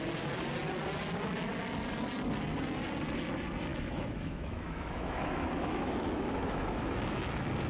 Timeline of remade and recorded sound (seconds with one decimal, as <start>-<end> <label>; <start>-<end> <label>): 0.0-3.7 recorded; 3.7-7.3 remade; 7.3-7.7 recorded